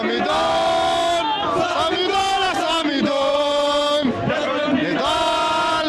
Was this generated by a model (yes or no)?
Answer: no